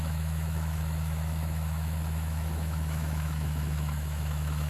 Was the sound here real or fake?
fake